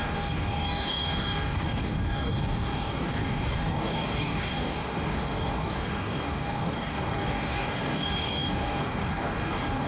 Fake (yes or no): yes